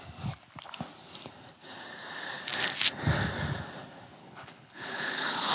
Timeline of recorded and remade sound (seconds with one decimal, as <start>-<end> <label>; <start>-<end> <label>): 0.0-4.2 recorded; 4.2-5.5 remade